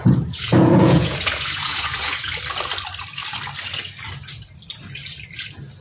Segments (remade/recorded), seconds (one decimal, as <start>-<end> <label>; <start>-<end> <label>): 0.0-2.4 remade; 2.4-5.8 recorded